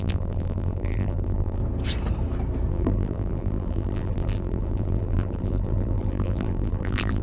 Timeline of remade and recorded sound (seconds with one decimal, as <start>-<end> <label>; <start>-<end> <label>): 0.0-1.6 remade; 1.6-2.7 recorded; 2.7-7.2 remade